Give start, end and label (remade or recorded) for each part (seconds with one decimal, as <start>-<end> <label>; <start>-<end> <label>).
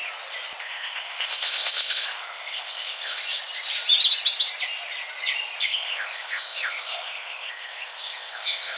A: 0.0-0.6 recorded; 0.6-3.2 remade; 3.2-5.6 recorded; 5.6-8.8 remade